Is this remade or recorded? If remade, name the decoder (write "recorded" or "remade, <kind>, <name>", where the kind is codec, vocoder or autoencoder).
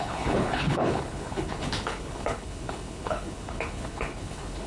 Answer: remade, codec, HILCodec